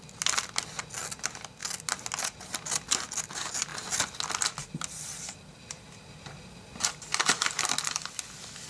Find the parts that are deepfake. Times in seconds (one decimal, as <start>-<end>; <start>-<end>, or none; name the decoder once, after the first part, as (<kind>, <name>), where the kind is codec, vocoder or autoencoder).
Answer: none